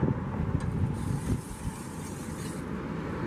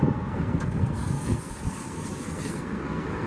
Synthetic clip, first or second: second